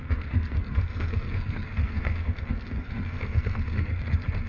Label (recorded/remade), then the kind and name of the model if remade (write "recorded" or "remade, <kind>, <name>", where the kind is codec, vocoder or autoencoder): remade, codec, SNAC